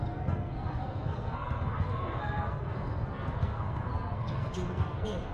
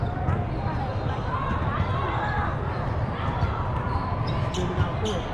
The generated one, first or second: first